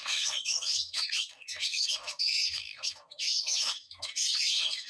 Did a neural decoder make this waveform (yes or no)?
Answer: yes